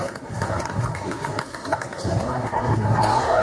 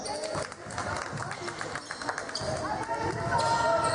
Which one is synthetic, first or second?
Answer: first